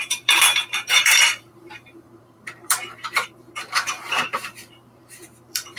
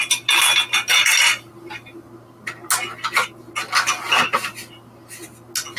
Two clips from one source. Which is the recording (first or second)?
second